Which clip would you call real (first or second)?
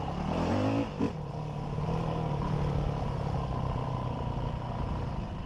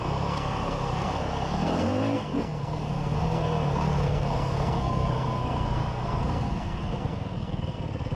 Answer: first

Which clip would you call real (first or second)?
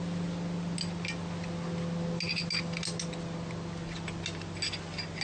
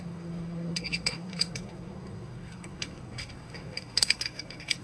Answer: first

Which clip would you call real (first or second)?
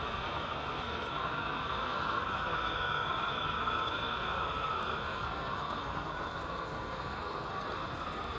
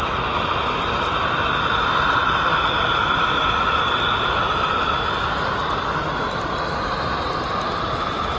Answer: second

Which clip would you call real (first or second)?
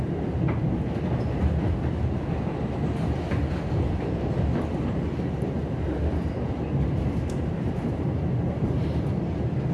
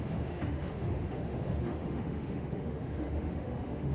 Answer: first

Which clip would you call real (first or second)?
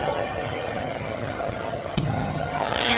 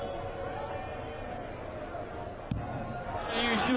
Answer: second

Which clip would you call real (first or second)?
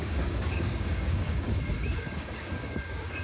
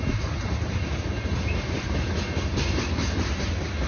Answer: second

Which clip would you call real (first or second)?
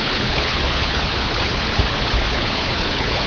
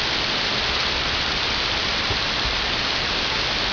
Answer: second